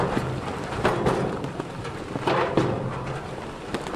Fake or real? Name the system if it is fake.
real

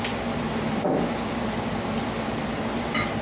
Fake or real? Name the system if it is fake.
real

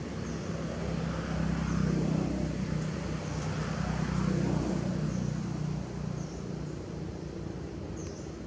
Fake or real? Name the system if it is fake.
real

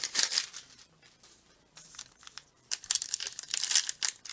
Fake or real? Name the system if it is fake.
fake, vocoder, BigVGAN v2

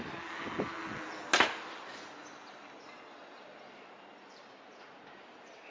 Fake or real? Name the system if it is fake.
real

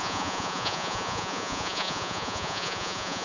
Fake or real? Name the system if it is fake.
fake, vocoder, Vocos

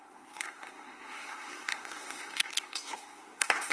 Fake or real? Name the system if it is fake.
fake, codec, SNAC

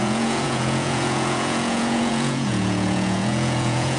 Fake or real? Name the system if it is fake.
fake, vocoder, Vocos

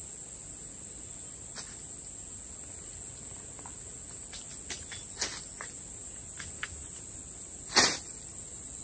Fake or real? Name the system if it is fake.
real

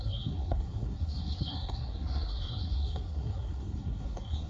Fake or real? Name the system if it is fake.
fake, codec, SNAC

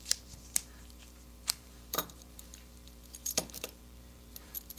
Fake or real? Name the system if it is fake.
fake, vocoder, BigVGAN v2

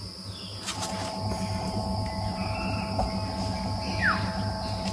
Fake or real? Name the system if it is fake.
real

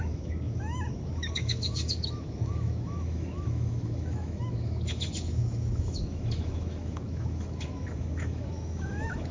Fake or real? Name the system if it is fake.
fake, autoencoder, DAC-VAE